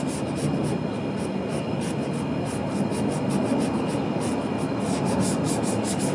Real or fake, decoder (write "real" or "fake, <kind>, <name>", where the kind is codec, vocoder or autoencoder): real